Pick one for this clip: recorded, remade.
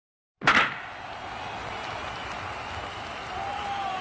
recorded